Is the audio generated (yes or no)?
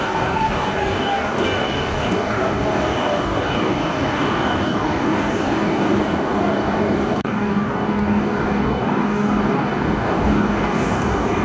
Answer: yes